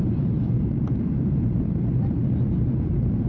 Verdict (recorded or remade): remade